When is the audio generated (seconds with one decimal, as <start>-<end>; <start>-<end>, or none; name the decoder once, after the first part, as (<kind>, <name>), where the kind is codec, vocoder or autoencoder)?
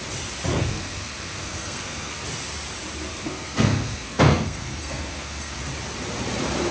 0.5-2.2 (codec, SNAC); 3.1-5.6